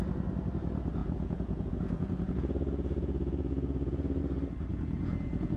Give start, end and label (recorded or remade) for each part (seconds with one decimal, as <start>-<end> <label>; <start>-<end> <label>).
0.0-1.0 recorded; 1.0-4.2 remade; 4.2-4.7 recorded; 4.7-5.6 remade